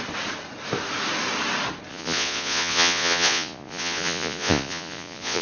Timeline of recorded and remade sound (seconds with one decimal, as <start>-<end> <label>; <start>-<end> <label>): 0.0-1.9 recorded; 1.9-5.4 remade